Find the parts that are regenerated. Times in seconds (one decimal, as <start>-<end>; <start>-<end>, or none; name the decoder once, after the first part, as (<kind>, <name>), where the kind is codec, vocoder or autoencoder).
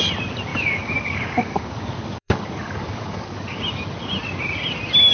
0.5-3.6 (codec, DAC)